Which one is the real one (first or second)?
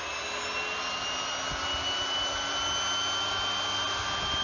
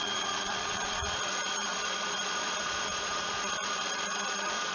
first